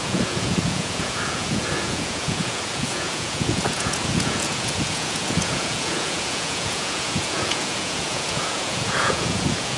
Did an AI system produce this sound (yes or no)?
yes